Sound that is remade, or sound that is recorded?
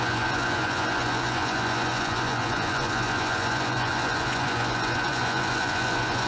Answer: remade